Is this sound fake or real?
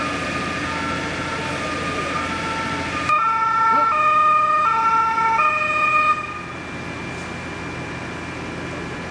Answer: real